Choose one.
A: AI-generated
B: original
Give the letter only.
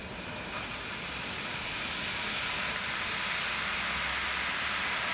B